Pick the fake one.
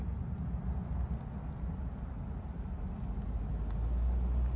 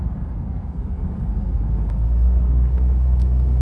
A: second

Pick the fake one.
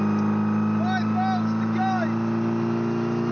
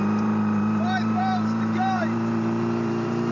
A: second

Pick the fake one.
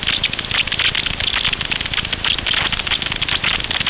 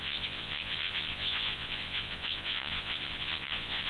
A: second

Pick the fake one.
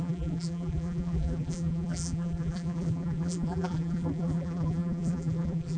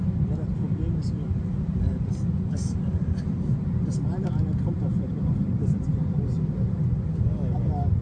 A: first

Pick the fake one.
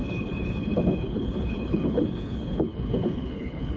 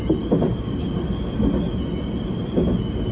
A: first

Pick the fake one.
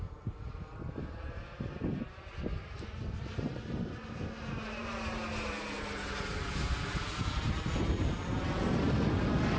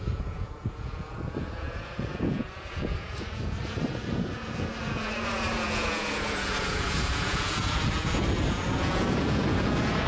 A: second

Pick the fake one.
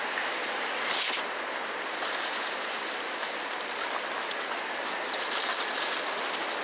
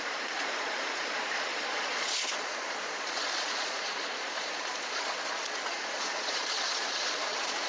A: second